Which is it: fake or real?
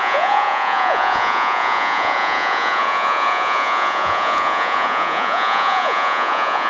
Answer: fake